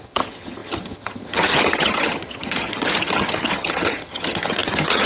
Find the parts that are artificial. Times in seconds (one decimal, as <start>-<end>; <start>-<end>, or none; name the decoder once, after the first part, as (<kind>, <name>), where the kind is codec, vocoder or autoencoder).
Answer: 0.0-5.1 (vocoder, HiFi-GAN)